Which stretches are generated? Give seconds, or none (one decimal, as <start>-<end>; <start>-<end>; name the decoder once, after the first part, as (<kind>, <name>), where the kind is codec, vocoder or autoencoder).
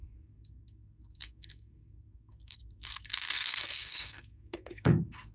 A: 0.0-5.3 (codec, SNAC)